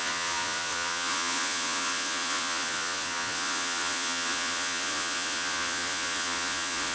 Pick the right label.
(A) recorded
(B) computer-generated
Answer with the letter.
B